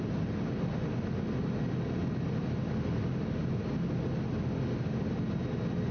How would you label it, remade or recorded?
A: recorded